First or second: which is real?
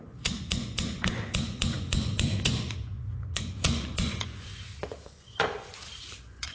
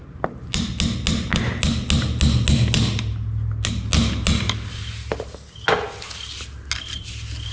second